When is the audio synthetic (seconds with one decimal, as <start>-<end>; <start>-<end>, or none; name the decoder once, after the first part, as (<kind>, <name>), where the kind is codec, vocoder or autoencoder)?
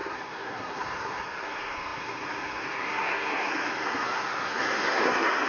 0.0-5.5 (codec, SNAC)